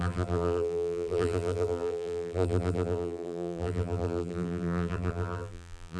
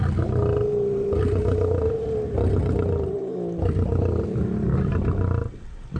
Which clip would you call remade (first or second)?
first